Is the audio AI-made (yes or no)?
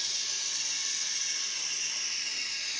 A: no